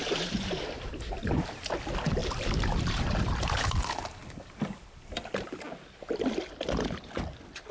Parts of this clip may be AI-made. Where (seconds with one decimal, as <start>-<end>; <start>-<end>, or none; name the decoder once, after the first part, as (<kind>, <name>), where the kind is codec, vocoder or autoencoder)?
0.0-1.1 (vocoder, BigVGAN v2); 2.2-3.8